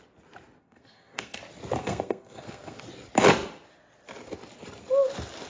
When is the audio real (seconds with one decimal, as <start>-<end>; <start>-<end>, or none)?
0.0-0.6; 1.4-1.8; 2.8-5.5